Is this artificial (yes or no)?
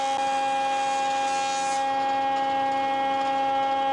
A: no